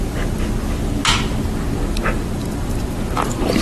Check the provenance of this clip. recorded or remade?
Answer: recorded